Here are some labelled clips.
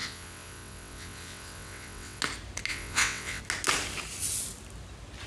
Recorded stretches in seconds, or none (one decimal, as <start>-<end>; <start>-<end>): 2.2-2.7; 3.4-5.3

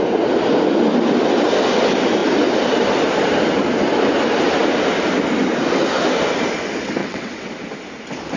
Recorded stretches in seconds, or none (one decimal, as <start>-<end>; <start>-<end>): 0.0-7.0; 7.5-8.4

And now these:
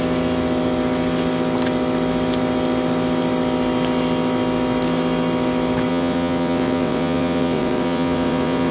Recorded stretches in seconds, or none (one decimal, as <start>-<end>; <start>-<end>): 0.0-5.9

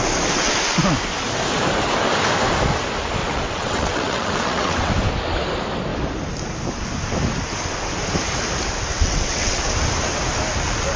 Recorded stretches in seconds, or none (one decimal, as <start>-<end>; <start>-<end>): 0.0-3.2; 4.9-8.9; 9.6-11.0

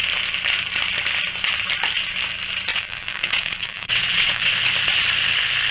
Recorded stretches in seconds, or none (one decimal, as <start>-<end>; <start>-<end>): 0.0-2.7; 4.5-5.7

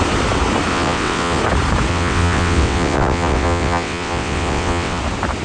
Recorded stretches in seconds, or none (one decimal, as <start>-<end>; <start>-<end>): 0.0-0.7; 1.4-1.9; 5.0-5.4